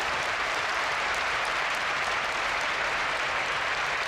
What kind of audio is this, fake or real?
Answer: fake